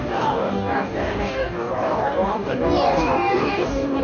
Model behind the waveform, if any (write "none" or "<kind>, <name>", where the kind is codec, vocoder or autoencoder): codec, DAC